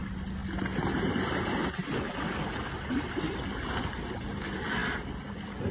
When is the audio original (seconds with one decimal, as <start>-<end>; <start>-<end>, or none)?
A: 0.0-5.7